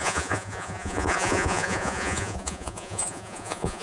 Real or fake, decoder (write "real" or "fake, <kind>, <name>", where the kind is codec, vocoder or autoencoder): fake, vocoder, Vocos